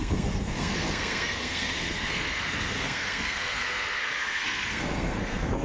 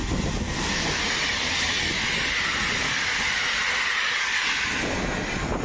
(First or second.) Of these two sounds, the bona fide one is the second